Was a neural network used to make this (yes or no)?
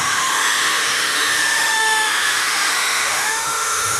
yes